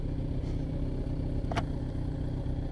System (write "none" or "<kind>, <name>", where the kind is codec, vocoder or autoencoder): none